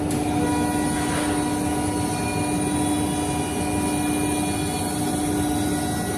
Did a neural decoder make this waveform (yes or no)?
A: no